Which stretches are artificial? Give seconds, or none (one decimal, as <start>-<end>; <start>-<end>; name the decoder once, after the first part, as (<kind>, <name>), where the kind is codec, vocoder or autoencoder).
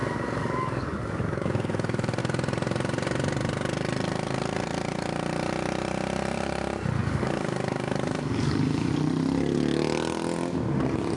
0.0-2.2 (codec, DAC); 7.0-8.9